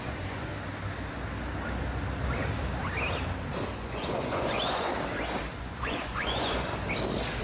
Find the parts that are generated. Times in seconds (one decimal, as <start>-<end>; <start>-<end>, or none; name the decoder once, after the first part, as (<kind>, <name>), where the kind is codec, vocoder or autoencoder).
0.0-0.5 (vocoder, Vocos); 3.8-4.9; 5.6-6.7